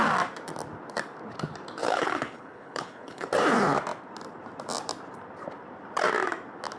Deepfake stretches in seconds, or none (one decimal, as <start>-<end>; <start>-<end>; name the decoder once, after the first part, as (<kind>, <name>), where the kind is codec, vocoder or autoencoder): 1.8-3.3 (codec, HILCodec)